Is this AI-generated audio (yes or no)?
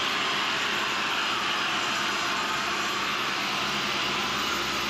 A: no